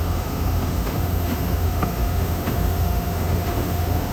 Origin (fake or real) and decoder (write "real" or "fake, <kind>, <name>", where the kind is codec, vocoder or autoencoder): fake, autoencoder, DAC-VAE